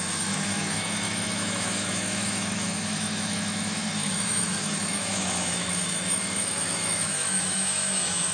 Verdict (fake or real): fake